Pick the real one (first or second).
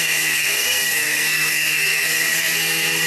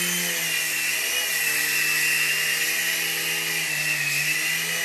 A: second